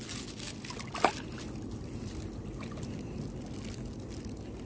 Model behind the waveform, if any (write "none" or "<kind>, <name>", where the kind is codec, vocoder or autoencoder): none